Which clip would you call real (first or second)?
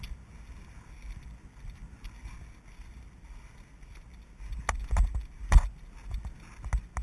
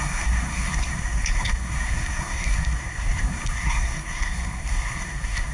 first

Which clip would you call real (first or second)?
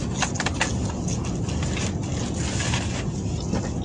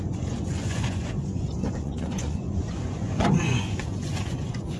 first